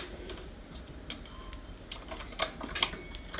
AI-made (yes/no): no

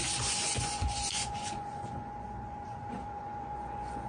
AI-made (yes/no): yes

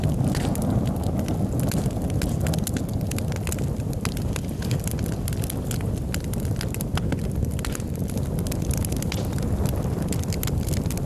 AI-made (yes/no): no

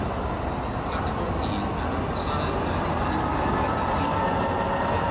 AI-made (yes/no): no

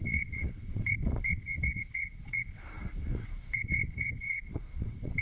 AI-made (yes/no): yes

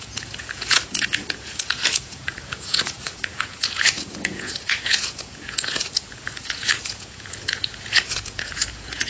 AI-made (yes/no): yes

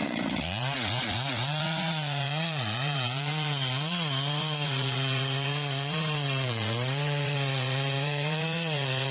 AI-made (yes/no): yes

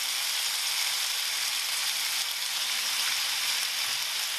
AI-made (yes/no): no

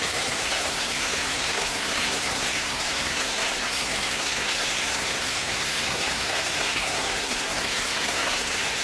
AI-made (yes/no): yes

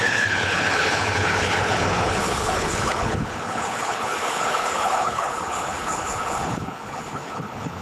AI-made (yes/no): yes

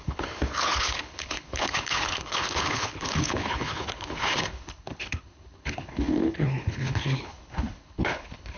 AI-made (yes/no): yes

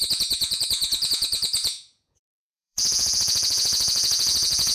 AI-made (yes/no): yes